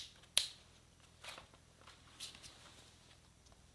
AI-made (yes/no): no